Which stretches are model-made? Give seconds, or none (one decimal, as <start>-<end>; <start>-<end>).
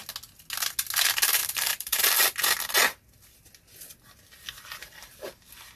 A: 1.4-2.0